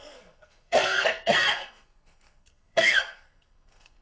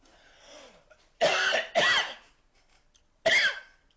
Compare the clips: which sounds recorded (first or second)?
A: second